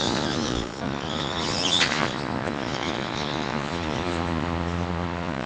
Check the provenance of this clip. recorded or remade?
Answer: remade